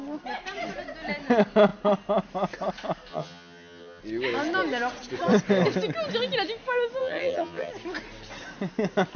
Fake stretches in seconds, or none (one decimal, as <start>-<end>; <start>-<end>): 3.1-4.0; 7.0-7.7